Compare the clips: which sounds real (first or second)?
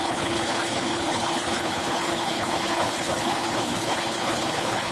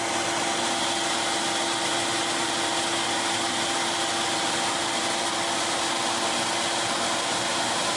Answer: second